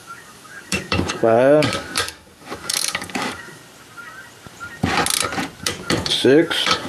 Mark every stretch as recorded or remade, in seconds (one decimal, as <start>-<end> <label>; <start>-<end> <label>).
0.0-3.6 remade; 3.6-5.6 recorded; 5.6-6.9 remade